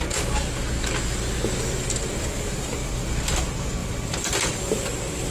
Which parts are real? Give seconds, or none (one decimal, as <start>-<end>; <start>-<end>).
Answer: 0.0-2.8; 3.4-3.8; 4.8-5.3